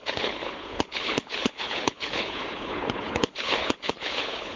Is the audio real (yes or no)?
no